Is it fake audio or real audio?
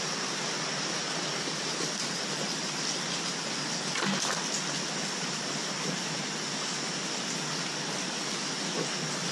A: real